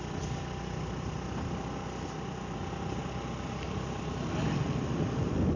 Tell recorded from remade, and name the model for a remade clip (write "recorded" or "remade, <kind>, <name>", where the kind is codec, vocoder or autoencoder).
recorded